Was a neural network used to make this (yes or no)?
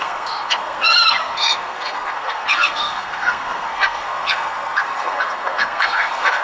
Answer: yes